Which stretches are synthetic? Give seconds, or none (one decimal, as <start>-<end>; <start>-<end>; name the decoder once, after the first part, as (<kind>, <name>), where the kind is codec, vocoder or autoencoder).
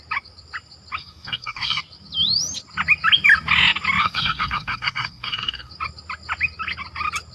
1.0-1.8 (codec, SNAC); 4.0-5.7